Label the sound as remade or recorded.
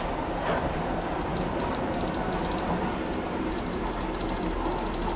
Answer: recorded